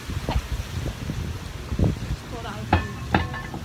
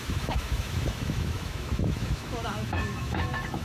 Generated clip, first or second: second